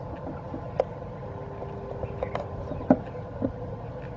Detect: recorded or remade recorded